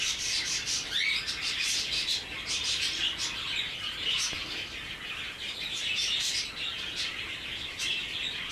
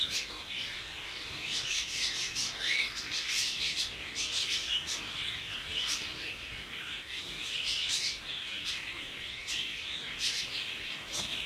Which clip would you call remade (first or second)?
second